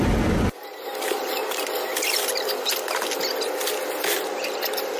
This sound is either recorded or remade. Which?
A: recorded